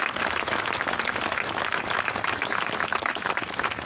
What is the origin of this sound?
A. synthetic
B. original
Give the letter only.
A